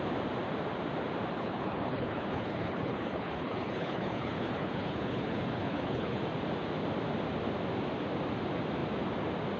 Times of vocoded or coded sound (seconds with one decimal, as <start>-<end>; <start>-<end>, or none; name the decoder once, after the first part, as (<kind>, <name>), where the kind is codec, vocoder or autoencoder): 1.3-6.2 (codec, HILCodec)